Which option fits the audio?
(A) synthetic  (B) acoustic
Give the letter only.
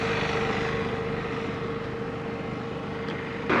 B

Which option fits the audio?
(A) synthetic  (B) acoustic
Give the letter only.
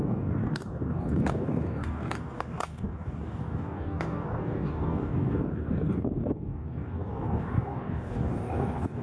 A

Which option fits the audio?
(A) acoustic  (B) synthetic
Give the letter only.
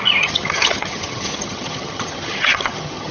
B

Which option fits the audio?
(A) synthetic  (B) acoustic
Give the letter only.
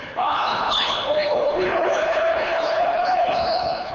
A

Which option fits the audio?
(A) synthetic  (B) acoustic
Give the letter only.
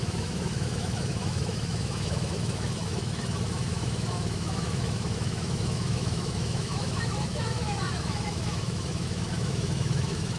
A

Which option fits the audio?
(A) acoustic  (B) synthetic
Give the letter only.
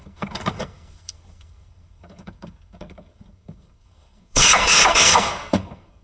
B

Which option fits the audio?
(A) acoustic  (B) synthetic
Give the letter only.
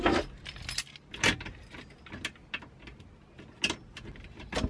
A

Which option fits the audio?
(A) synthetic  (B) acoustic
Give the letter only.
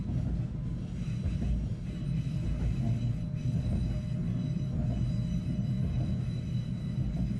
B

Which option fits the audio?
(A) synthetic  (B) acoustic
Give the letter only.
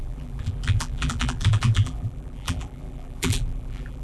A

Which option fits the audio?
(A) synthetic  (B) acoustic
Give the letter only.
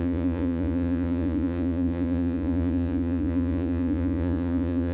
A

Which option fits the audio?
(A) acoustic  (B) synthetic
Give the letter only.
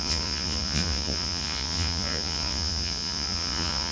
B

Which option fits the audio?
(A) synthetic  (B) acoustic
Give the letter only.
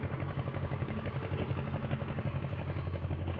A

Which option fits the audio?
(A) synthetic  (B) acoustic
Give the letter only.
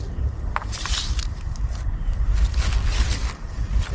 B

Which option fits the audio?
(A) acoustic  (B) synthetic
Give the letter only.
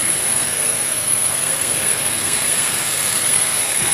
B